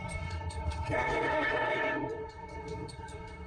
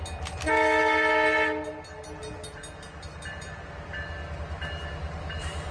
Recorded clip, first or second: second